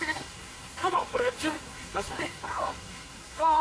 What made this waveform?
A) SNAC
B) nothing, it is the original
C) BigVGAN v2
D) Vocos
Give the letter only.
A